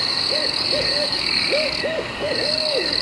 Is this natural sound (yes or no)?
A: no